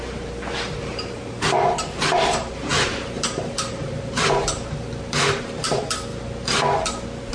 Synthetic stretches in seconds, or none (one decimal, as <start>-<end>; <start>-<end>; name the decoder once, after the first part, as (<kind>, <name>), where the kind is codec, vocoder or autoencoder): 0.0-6.1 (vocoder, BigVGAN v2)